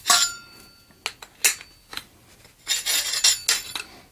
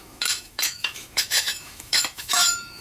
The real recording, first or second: first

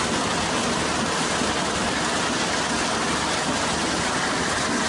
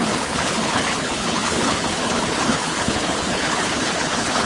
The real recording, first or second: first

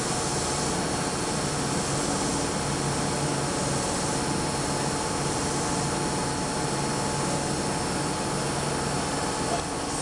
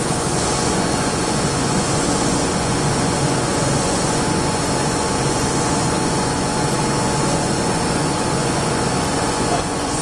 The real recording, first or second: first